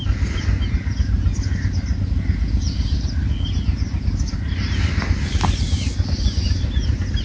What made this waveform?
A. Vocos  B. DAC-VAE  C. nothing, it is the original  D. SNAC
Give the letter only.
C